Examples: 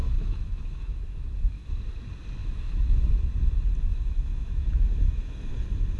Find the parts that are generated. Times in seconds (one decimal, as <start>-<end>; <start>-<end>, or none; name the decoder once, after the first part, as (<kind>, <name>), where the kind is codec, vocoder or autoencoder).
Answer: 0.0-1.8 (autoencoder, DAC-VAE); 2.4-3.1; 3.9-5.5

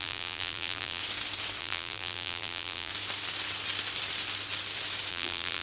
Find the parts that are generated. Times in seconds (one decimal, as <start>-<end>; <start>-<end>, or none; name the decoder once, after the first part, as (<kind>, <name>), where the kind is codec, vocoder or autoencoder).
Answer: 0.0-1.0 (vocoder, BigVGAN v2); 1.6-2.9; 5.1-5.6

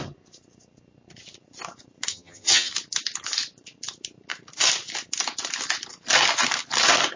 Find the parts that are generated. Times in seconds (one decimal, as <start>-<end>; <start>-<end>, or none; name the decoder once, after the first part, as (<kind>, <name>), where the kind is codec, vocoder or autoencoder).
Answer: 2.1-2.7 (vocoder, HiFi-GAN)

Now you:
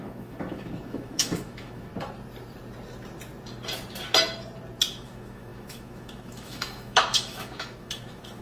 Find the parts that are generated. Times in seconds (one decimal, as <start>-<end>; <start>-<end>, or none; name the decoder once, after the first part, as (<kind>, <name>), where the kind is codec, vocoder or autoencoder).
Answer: 0.0-1.9 (autoencoder, DAC-VAE); 4.9-8.4

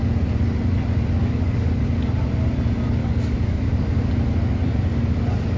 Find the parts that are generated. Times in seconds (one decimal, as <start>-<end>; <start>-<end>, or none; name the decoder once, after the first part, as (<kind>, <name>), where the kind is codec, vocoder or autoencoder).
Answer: 1.2-1.7 (codec, DAC); 3.0-4.1

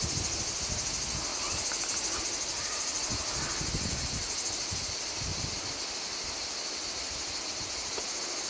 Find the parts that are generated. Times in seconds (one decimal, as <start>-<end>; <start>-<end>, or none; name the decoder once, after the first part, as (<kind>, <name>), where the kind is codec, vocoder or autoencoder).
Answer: none

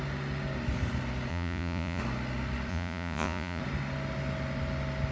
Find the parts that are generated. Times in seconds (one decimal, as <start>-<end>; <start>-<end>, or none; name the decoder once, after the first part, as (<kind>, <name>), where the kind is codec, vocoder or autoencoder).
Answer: 1.3-2.0 (vocoder, Vocos); 2.7-3.6

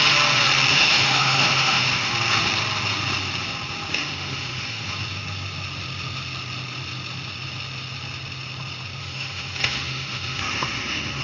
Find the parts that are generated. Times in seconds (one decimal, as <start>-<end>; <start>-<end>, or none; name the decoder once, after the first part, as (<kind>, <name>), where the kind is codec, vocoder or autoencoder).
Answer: 0.7-2.1 (autoencoder, DAC-VAE); 3.9-4.9; 9.0-11.2